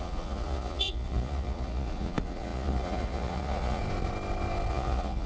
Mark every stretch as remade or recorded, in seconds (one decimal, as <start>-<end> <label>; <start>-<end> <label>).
0.0-3.8 remade; 3.8-4.7 recorded; 4.7-5.3 remade